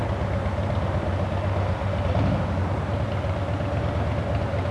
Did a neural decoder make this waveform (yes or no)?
no